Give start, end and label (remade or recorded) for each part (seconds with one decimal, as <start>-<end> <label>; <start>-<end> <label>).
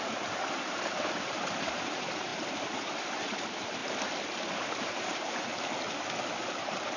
0.0-3.8 remade; 3.8-4.5 recorded; 4.5-5.5 remade; 5.5-6.6 recorded; 6.6-7.0 remade